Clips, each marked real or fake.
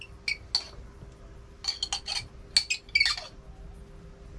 real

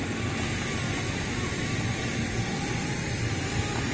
real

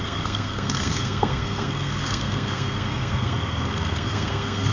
fake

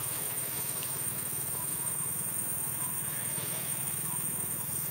fake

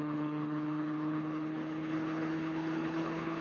fake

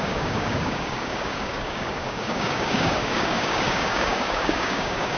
fake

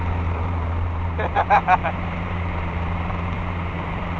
fake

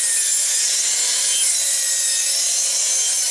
real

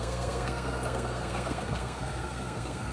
fake